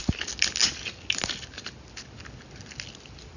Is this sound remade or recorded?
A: recorded